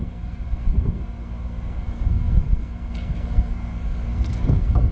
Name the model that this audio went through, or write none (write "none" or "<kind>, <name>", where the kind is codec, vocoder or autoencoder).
codec, SNAC